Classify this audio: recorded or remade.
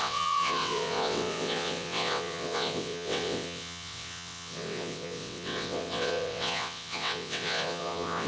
remade